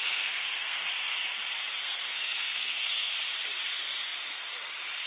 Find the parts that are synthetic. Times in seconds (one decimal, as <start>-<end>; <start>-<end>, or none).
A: 0.0-0.9; 1.8-3.1